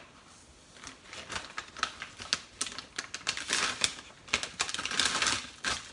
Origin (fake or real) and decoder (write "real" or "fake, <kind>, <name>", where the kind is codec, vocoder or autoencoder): real